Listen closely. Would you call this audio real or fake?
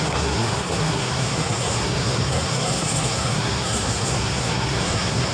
fake